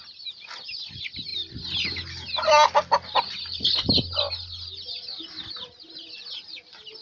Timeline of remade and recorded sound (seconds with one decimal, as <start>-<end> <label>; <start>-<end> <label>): 0.0-7.0 recorded